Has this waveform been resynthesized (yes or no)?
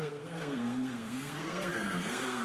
yes